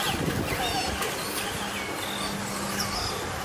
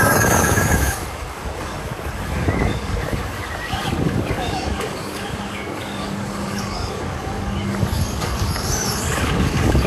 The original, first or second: first